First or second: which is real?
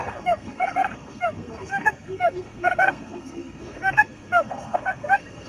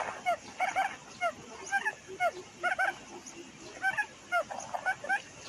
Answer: second